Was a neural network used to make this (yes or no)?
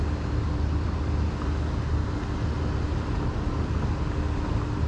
no